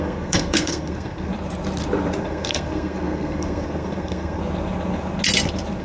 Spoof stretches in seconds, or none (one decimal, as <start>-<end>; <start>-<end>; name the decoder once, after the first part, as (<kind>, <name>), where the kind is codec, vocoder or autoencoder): 0.0-1.3 (codec, SNAC); 2.2-4.4